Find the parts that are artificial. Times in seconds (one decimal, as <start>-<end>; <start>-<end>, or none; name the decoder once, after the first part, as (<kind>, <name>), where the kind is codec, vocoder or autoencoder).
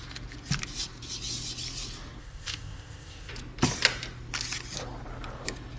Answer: 2.2-3.3 (codec, ZipCodec)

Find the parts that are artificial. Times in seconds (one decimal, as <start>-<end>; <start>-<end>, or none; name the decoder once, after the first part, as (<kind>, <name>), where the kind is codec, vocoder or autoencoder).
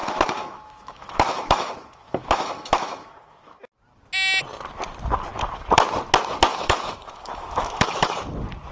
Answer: 0.0-3.6 (autoencoder, DAC-VAE); 6.5-8.2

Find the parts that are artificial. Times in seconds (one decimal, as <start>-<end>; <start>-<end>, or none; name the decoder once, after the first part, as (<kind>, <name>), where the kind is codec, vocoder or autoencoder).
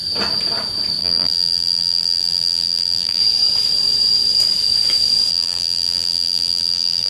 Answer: 1.0-3.2 (vocoder, BigVGAN v2); 5.3-7.1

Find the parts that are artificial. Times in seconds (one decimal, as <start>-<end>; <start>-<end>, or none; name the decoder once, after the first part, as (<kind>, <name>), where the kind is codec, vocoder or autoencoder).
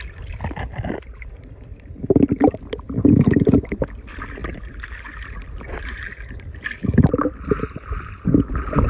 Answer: none